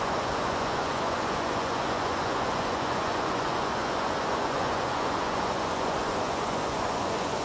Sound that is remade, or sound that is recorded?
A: remade